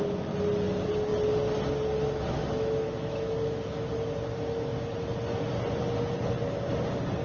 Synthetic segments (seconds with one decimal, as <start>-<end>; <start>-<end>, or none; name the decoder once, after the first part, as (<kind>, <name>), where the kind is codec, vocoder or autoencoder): 2.4-3.9 (autoencoder, DAC-VAE)